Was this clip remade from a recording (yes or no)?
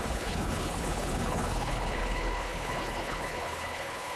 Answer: yes